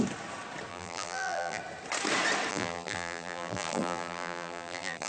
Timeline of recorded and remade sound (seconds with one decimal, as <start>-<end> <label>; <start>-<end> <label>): 0.0-0.7 recorded; 0.7-1.6 remade; 1.6-2.5 recorded; 2.5-5.1 remade